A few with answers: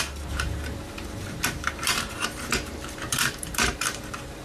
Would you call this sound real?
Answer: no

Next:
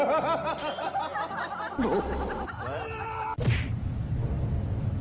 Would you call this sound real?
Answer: yes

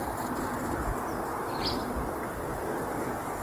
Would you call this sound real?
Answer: yes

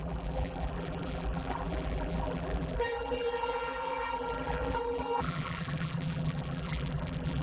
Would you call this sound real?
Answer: no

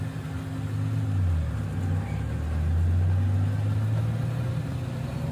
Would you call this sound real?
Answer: yes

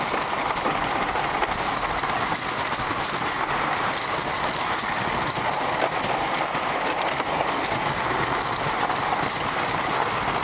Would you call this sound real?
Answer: yes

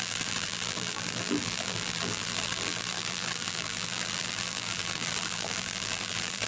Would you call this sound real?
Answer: no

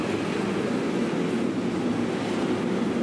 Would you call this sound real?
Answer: yes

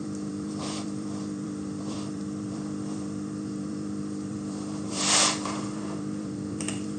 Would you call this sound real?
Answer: no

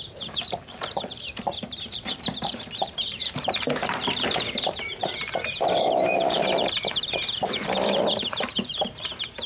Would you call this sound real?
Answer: no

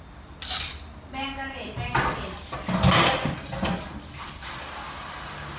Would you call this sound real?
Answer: yes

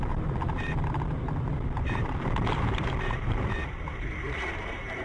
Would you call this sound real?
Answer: no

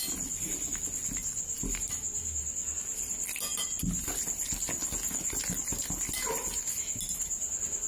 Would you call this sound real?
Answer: yes